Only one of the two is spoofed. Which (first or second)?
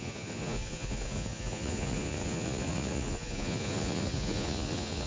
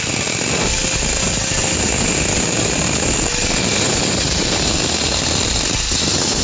first